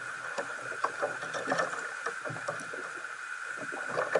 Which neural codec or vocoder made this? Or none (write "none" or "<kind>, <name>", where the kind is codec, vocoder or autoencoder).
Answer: none